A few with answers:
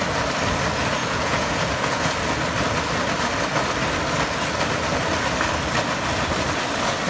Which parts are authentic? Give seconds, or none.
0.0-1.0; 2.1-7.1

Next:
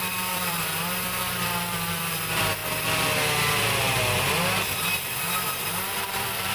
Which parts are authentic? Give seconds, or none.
2.6-6.0

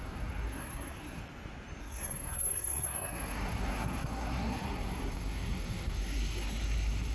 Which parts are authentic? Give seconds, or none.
1.2-1.8